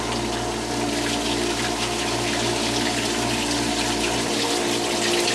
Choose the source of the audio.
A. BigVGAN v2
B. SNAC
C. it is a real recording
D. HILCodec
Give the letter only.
C